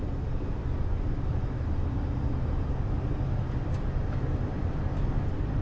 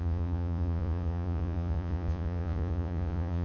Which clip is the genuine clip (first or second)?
first